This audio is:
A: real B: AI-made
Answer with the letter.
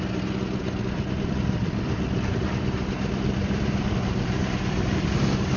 B